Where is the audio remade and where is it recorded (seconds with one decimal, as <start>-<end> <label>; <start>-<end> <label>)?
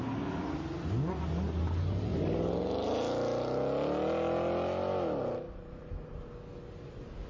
0.0-7.3 recorded